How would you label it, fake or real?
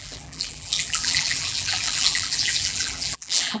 fake